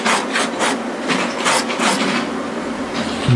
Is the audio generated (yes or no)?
no